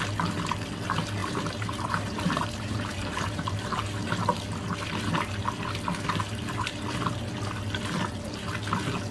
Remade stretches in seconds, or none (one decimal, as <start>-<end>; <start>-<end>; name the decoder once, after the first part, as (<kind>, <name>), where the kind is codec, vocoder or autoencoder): 1.2-3.8 (vocoder, BigVGAN v2)